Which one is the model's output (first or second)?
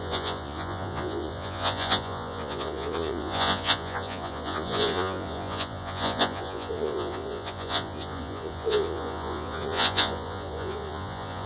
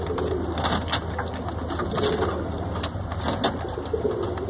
first